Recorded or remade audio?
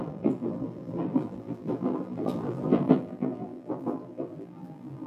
remade